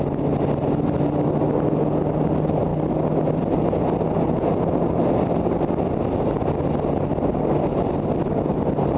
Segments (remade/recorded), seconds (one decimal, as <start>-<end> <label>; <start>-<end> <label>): 0.0-9.0 recorded